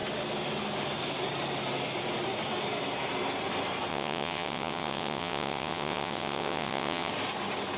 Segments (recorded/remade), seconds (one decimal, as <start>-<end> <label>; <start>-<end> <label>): 0.0-3.9 recorded; 3.9-7.1 remade; 7.1-7.8 recorded